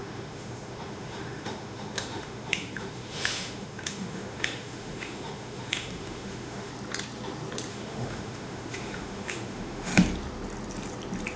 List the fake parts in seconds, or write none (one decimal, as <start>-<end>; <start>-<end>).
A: 0.0-6.7; 7.7-9.9